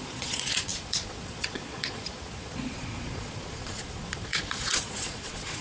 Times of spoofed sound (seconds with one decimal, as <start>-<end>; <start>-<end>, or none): 0.0-5.6